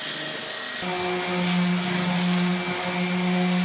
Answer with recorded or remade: recorded